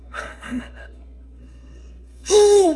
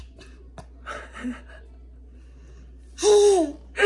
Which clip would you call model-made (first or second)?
first